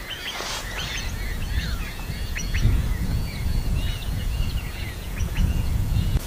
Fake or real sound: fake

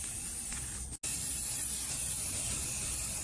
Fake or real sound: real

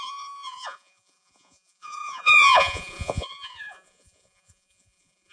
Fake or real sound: fake